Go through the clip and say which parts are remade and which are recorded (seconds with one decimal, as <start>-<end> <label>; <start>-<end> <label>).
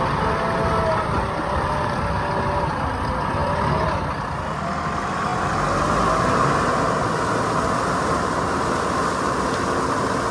0.0-10.3 recorded